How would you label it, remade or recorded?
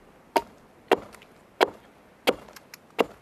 recorded